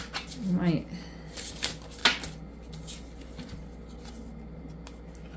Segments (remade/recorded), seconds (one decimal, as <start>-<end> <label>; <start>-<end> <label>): 0.0-5.4 recorded